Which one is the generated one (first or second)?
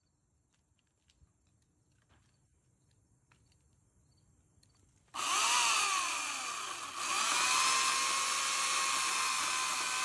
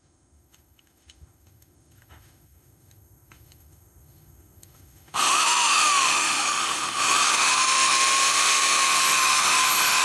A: second